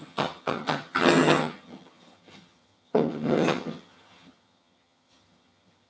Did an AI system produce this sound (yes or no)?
yes